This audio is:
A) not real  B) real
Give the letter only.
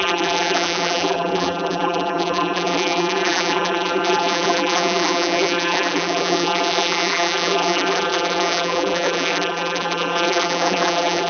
A